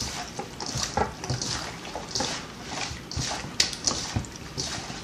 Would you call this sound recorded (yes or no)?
yes